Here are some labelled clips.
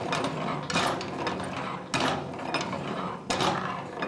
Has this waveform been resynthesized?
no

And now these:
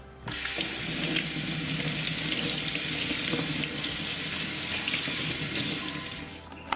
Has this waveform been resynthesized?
no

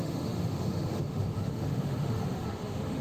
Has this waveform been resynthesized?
yes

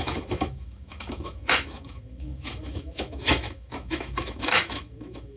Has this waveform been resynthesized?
yes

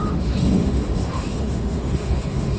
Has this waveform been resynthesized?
yes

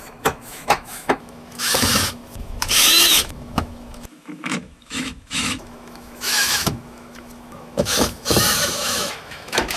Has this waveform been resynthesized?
yes